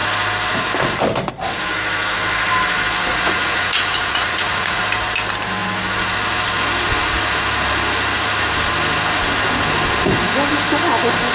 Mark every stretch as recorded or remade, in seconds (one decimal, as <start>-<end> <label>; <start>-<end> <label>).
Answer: 0.0-3.1 recorded; 3.1-4.8 remade; 4.8-11.3 recorded